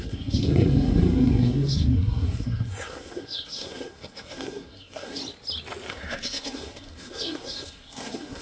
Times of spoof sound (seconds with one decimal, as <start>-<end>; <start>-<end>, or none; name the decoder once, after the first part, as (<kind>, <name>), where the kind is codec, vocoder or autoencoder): 0.0-5.2 (codec, SNAC); 5.9-8.4